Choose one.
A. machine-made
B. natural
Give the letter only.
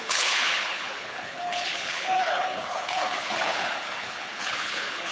A